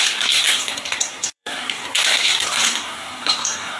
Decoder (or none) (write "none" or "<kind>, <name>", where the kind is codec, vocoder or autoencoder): codec, SNAC